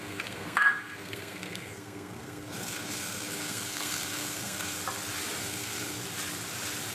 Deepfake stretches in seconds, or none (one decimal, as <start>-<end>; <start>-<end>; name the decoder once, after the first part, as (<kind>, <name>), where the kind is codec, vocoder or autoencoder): 0.0-4.8 (codec, SNAC); 5.4-6.0